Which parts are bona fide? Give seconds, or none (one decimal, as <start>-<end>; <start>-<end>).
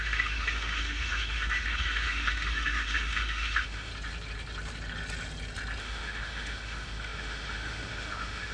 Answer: 3.9-5.8